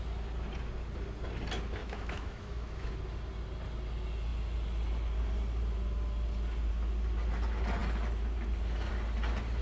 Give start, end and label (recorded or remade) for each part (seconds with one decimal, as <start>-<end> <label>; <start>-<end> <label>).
0.0-1.8 recorded; 1.8-2.9 remade; 2.9-9.6 recorded